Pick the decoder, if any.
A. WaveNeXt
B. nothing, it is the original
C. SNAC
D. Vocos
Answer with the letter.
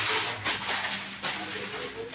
B